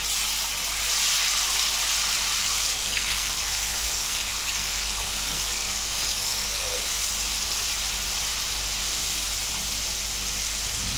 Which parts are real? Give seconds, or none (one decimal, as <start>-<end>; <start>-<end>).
0.0-2.4; 7.1-11.0